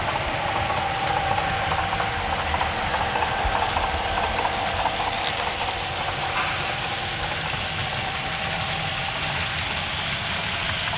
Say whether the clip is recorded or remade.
recorded